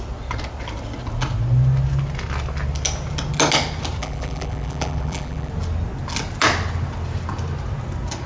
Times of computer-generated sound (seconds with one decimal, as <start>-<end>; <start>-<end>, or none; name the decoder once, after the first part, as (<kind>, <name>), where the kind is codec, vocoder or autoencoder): 4.0-5.5 (vocoder, BigVGAN v2)